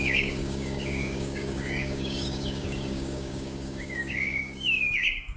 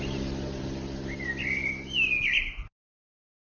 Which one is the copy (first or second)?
first